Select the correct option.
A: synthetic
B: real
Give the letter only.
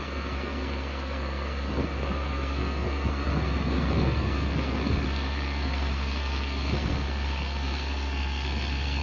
A